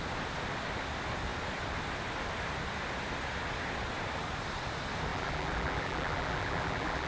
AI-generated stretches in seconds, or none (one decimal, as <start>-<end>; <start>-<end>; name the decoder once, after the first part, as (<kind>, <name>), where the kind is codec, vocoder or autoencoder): 5.1-7.1 (vocoder, BigVGAN v2)